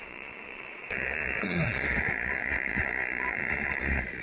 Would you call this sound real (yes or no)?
no